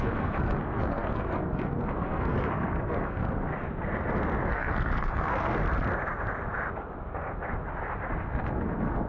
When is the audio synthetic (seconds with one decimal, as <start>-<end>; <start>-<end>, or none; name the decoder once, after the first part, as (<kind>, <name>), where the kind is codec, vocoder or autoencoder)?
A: 0.0-3.5 (codec, SNAC); 4.5-5.6; 8.2-9.1